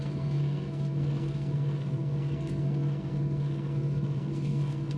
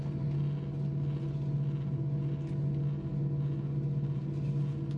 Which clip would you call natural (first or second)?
second